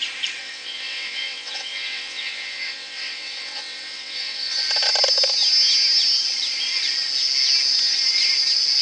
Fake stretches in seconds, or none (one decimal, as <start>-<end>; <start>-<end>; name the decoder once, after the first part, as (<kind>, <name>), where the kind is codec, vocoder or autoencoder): 0.4-4.6 (vocoder, WaveNeXt)